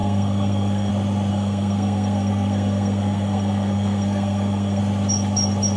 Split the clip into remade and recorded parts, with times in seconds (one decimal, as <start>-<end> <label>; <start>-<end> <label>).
0.0-0.9 remade; 0.9-1.3 recorded; 1.3-4.8 remade; 4.8-5.8 recorded